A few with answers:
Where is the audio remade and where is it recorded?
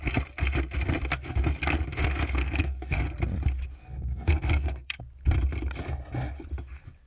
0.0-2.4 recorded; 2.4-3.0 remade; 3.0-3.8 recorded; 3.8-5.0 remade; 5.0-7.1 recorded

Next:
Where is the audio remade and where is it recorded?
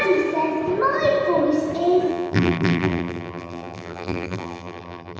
0.0-2.1 recorded; 2.1-5.2 remade